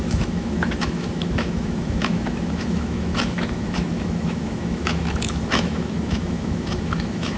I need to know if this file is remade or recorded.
remade